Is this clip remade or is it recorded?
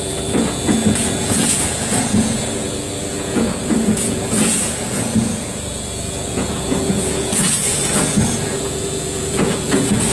remade